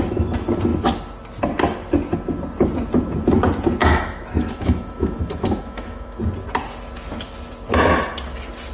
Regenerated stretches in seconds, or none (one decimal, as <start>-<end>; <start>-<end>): 3.8-6.2